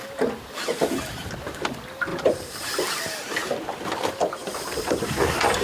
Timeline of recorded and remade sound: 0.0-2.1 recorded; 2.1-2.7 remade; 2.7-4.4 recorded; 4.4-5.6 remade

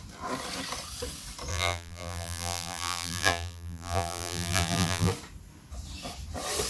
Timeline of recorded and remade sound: 0.0-1.5 recorded; 1.5-5.1 remade; 5.1-6.7 recorded

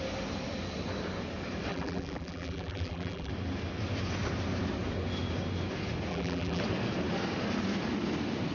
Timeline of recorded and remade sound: 0.0-1.7 recorded; 1.7-3.3 remade; 3.3-6.1 recorded; 6.1-6.6 remade; 6.6-8.5 recorded